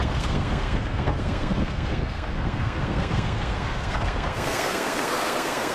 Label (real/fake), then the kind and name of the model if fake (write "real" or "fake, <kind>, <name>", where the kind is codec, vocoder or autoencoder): fake, codec, SNAC